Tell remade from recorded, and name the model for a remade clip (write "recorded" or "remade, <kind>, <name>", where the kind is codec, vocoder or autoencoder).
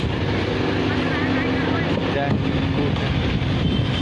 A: recorded